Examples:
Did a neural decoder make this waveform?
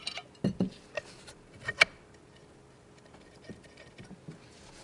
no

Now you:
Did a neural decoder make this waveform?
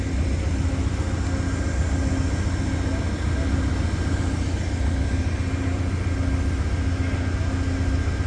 no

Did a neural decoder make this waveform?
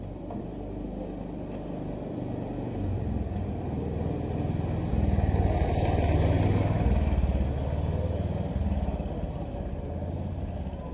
no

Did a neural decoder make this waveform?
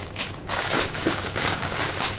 yes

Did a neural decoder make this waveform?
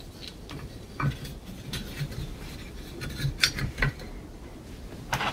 no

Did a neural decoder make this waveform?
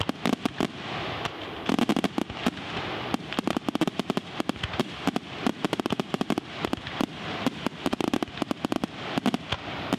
no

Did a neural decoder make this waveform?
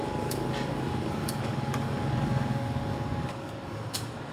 yes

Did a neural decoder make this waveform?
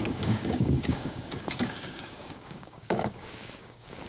yes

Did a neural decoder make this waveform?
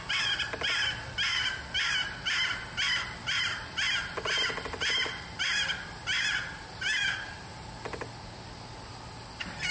no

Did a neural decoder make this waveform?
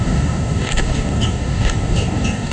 yes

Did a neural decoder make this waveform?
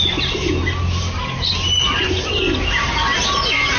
no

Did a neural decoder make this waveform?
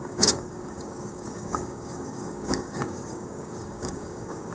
yes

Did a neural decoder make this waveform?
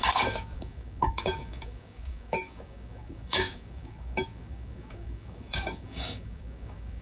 yes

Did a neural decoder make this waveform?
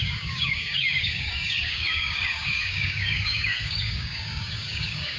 yes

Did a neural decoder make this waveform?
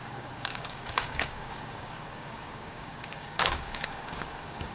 yes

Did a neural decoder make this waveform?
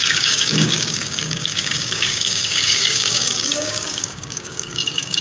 yes